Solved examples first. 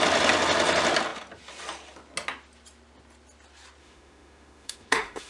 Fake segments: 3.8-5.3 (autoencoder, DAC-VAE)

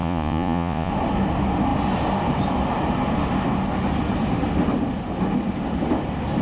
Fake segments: 0.0-0.9 (vocoder, Vocos)

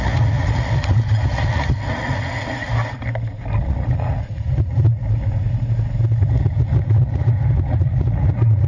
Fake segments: 0.0-2.7 (vocoder, Vocos); 3.6-5.0; 6.2-8.7

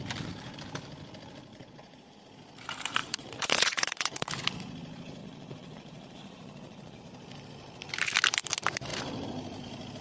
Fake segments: 1.5-2.1 (vocoder, Vocos); 3.0-4.3; 5.2-7.0